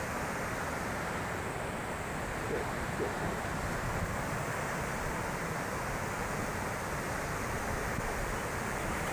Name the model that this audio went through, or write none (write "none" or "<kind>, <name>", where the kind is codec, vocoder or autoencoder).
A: vocoder, BigVGAN v2